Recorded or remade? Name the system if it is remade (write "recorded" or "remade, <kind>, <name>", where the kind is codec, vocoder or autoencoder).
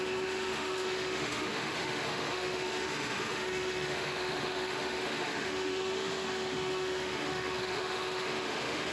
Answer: remade, autoencoder, DAC-VAE